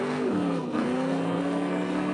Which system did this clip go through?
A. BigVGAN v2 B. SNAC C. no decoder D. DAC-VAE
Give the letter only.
B